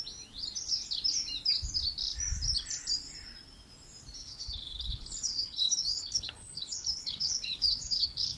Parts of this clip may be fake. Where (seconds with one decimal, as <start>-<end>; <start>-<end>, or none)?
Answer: 4.2-8.4